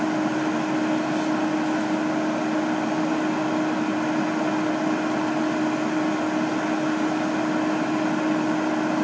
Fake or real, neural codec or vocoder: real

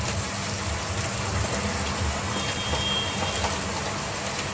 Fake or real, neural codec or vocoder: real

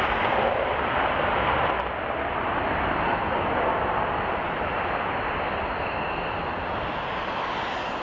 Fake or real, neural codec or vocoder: real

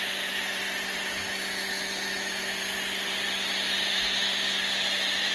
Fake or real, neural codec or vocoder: real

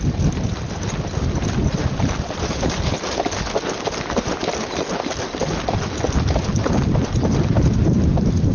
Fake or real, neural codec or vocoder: real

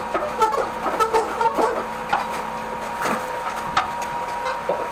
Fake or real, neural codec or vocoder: real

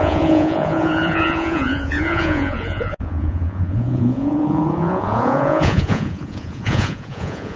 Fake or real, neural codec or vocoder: fake, vocoder, Vocos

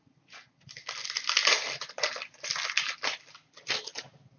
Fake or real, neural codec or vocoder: real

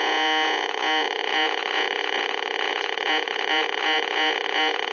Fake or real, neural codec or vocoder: fake, vocoder, Vocos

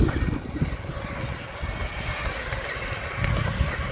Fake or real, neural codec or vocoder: real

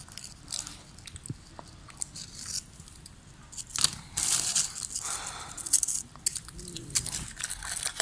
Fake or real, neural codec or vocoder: real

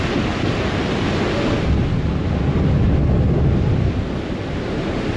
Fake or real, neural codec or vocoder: real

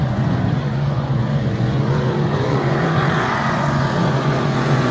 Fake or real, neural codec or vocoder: fake, vocoder, Vocos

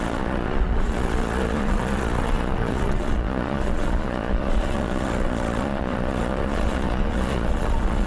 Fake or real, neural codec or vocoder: fake, vocoder, Vocos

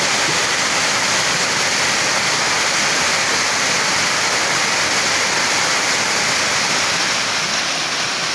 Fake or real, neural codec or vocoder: real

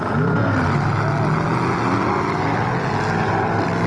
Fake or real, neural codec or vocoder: real